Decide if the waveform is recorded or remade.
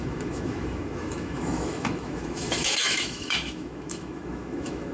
remade